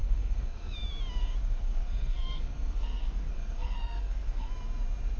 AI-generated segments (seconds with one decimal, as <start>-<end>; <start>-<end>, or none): 0.0-0.7; 1.4-4.5